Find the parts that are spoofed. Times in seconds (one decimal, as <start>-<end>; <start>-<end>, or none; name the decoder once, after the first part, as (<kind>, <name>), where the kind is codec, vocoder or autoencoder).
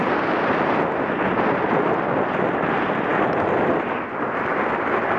none